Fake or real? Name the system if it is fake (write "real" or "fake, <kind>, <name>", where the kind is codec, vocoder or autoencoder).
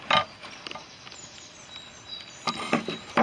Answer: real